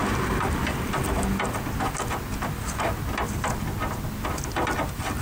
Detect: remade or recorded recorded